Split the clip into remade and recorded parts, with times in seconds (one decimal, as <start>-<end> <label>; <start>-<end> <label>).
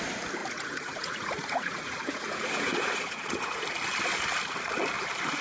0.0-0.4 recorded; 0.4-3.6 remade; 3.6-5.4 recorded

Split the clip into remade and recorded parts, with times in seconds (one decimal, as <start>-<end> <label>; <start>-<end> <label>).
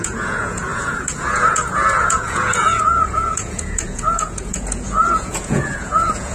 0.0-6.3 remade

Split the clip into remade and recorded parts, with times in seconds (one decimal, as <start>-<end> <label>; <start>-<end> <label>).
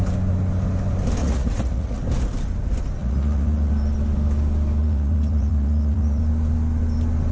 0.0-1.2 recorded; 1.2-2.0 remade; 2.0-3.0 recorded; 3.0-3.7 remade; 3.7-4.8 recorded; 4.8-6.2 remade; 6.2-7.3 recorded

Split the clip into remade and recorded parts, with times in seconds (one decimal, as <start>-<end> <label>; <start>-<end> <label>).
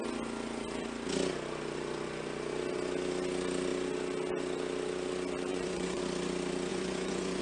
0.0-5.5 recorded; 5.5-6.0 remade; 6.0-6.7 recorded; 6.7-7.4 remade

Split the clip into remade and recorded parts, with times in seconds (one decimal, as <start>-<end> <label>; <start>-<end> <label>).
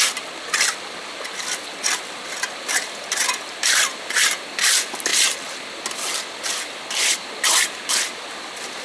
0.0-8.8 recorded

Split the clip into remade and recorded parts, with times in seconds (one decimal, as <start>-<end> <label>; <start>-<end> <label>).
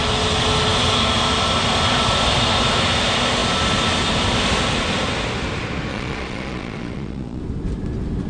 0.0-5.9 recorded; 5.9-7.4 remade; 7.4-8.3 recorded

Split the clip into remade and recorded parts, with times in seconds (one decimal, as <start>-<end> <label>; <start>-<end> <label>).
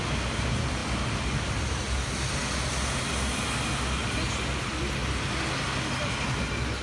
0.0-6.8 recorded